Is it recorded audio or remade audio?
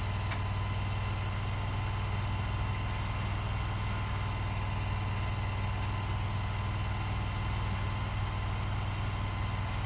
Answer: recorded